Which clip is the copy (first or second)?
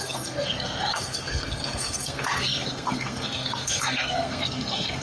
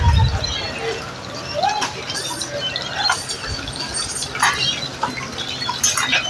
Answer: first